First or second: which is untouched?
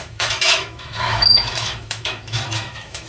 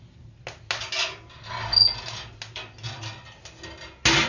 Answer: second